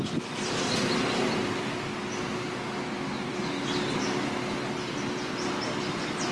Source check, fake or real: real